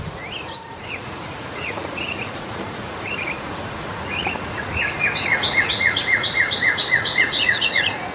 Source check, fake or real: fake